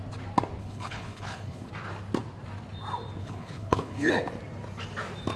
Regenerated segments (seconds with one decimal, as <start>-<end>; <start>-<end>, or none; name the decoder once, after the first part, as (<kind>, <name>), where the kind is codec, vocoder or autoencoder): 0.6-1.7 (codec, HILCodec); 3.2-4.1